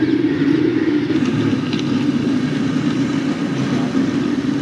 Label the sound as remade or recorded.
recorded